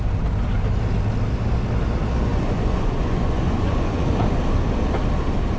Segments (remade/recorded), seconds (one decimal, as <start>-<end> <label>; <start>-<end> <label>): 0.0-2.3 recorded; 2.3-4.1 remade; 4.1-5.6 recorded